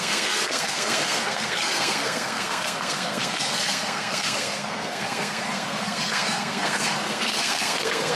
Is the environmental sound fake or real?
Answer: fake